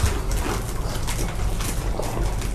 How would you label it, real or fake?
real